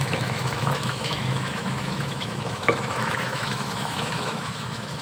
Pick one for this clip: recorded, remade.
remade